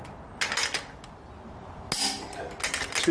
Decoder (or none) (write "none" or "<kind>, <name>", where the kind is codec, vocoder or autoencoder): none